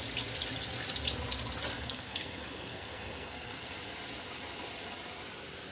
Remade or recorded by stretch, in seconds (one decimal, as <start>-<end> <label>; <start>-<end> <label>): 0.0-1.7 recorded; 1.7-3.7 remade; 3.7-5.7 recorded